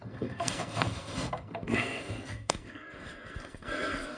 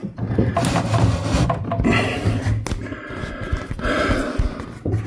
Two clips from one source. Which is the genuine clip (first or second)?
second